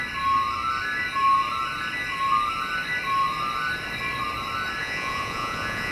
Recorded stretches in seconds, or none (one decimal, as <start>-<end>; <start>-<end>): 0.0-4.8